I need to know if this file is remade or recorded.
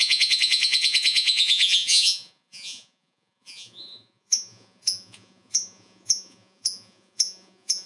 remade